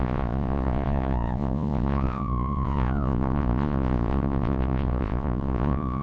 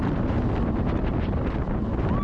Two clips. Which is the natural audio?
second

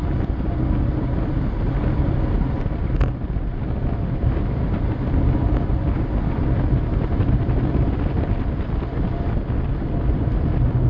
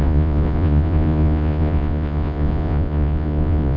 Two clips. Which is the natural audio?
first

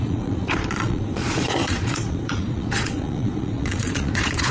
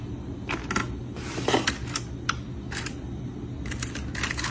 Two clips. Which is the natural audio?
second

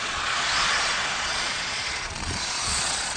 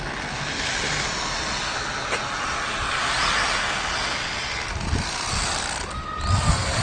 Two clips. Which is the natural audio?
second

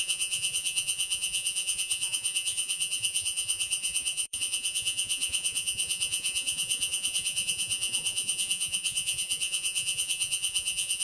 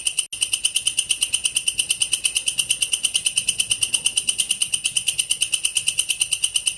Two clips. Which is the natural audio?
second